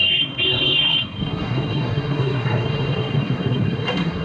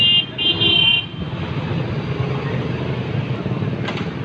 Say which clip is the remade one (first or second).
first